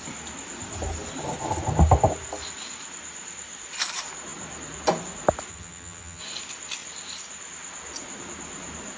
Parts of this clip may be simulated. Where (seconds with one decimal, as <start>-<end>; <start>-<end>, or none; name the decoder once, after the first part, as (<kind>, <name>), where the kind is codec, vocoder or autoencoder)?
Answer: 5.5-6.2 (vocoder, HiFi-GAN)